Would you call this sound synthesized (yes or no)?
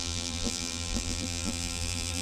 yes